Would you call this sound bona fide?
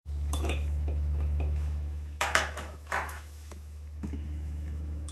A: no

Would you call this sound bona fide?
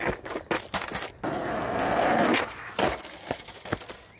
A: yes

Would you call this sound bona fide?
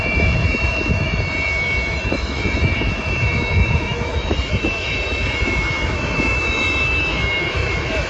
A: no